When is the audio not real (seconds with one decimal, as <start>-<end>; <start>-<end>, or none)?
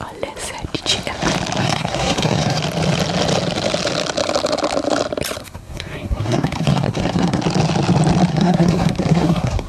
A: 1.6-2.6; 5.4-7.4; 8.3-9.7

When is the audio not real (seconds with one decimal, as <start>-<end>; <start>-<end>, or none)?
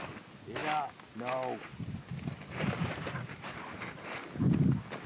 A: none